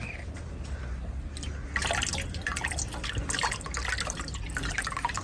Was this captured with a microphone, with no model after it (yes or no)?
yes